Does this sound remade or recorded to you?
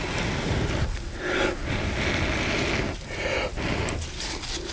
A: recorded